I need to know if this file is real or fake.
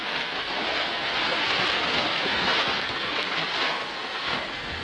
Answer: fake